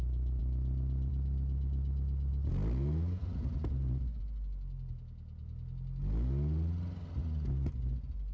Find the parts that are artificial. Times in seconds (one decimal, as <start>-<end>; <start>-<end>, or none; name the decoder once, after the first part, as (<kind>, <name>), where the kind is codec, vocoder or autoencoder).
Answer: none